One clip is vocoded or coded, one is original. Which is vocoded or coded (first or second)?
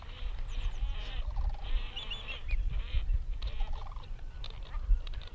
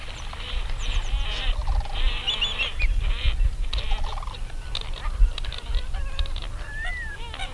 first